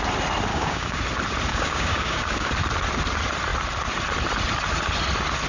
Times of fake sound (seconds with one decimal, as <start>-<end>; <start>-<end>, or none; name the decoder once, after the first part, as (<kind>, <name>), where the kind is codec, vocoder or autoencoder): 0.5-1.0 (codec, DAC); 1.5-2.5